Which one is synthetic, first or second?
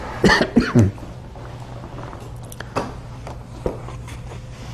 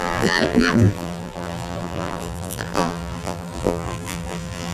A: second